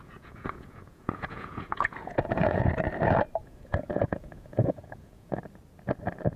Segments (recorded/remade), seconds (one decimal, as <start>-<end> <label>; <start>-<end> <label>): 0.0-2.7 remade; 2.7-3.4 recorded; 3.4-5.4 remade; 5.4-6.4 recorded